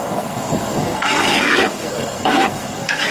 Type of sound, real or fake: fake